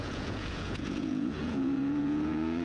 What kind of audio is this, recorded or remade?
remade